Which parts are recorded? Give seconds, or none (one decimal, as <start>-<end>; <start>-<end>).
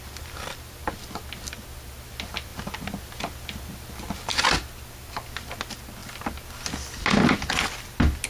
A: 0.0-8.3